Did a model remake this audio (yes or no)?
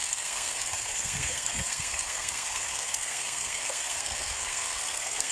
yes